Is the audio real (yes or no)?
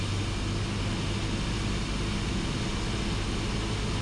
yes